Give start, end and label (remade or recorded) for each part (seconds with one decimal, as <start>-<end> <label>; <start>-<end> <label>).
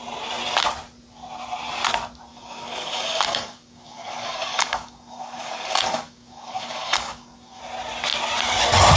0.0-2.3 recorded; 2.3-7.6 remade; 7.6-9.0 recorded